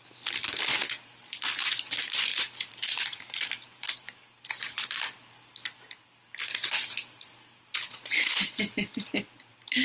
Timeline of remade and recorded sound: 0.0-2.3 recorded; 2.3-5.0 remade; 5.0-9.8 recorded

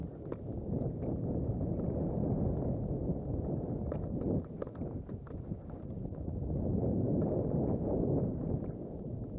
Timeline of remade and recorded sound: 0.0-9.4 recorded

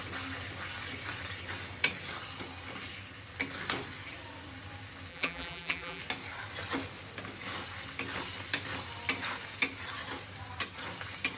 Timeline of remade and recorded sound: 0.0-5.1 recorded; 5.1-6.0 remade; 6.0-11.4 recorded

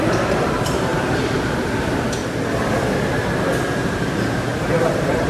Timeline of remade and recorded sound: 0.0-2.2 remade; 2.2-3.8 recorded; 3.8-4.5 remade; 4.5-5.3 recorded